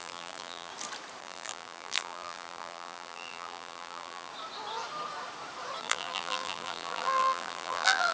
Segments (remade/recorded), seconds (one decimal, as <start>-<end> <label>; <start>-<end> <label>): 0.0-0.7 remade; 0.7-1.2 recorded; 1.2-4.3 remade; 4.3-5.8 recorded; 5.8-8.1 remade